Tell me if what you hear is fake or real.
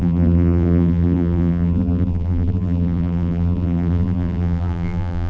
fake